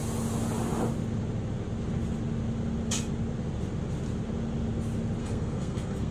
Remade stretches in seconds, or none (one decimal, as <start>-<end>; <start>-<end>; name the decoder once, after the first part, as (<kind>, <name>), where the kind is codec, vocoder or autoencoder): 5.2-6.1 (codec, SNAC)